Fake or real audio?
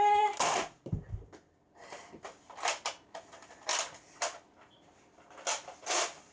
real